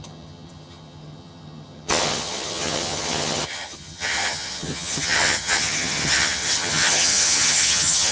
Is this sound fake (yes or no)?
yes